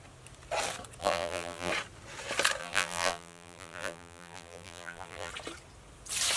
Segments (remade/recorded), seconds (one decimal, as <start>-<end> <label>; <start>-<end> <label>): 0.0-1.0 recorded; 1.0-1.7 remade; 1.7-2.6 recorded; 2.6-5.3 remade; 5.3-6.4 recorded